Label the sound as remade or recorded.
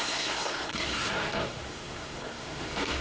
remade